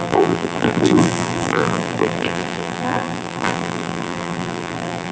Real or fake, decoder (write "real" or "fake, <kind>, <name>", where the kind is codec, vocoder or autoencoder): fake, vocoder, BigVGAN v2